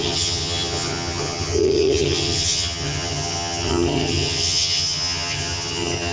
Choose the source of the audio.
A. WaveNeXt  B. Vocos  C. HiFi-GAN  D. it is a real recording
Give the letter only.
C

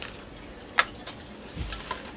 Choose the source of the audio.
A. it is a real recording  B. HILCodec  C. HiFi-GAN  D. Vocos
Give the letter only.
A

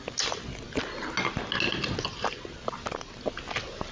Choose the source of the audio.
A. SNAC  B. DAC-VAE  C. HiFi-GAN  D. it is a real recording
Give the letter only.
D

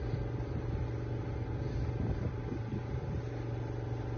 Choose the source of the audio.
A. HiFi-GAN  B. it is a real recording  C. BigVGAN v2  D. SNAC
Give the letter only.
B